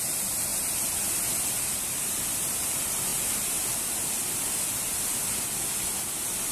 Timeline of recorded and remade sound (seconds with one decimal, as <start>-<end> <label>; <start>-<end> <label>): 0.0-6.5 recorded